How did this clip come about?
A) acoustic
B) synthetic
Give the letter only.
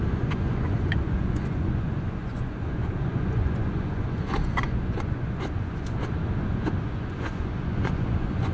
B